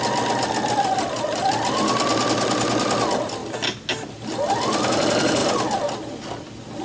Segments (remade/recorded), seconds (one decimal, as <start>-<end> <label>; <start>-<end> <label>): 0.0-6.8 recorded